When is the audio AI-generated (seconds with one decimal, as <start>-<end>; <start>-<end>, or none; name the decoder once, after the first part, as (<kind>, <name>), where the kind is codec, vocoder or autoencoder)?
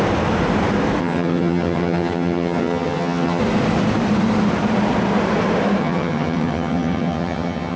1.0-3.4 (vocoder, HiFi-GAN); 5.8-7.8